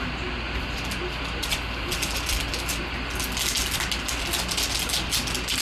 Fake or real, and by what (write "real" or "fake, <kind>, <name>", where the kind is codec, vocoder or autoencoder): real